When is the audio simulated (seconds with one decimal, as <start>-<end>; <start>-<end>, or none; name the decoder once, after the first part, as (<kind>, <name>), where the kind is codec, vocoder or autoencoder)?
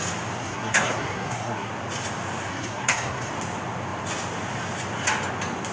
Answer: 0.4-1.7 (codec, SNAC); 2.5-3.3